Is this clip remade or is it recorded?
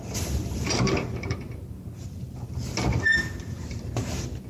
remade